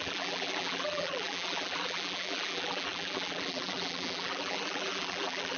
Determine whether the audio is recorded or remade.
remade